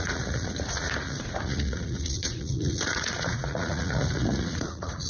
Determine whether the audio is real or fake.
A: fake